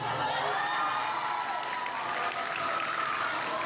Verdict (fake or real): real